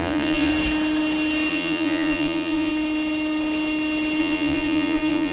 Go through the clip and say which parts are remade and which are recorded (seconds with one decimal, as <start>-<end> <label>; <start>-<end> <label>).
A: 0.0-0.5 remade; 0.5-1.5 recorded; 1.5-2.7 remade; 2.7-4.2 recorded; 4.2-5.3 remade